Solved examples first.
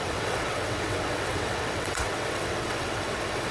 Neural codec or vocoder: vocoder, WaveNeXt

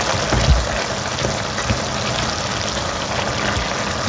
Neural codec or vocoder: none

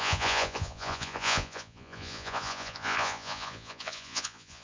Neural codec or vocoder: vocoder, Vocos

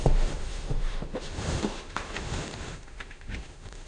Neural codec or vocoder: autoencoder, DAC-VAE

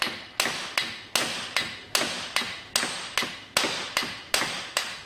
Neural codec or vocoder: none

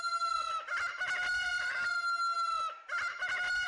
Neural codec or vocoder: none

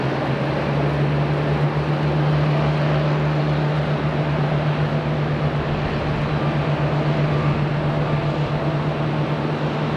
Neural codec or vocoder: none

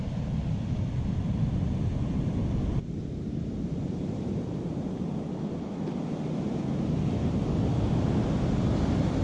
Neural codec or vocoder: none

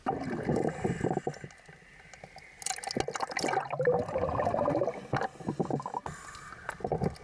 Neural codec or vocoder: none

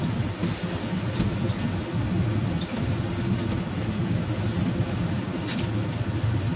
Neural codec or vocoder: none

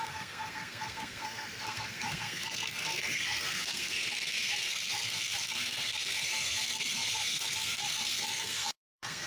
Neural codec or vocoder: codec, SNAC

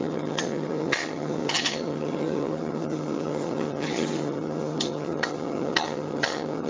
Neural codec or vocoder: vocoder, HiFi-GAN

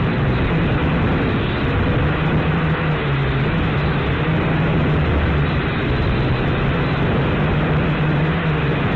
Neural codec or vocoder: none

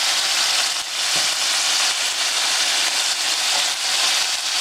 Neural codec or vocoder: none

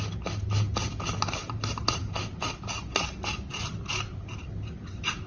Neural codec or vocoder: none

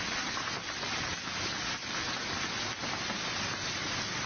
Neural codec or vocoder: none